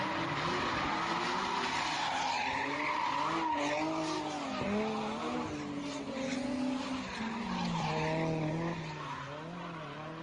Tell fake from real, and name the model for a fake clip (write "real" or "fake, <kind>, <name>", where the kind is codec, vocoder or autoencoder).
real